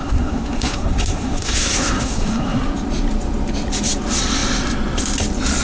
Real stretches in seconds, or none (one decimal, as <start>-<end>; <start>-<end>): 2.6-5.6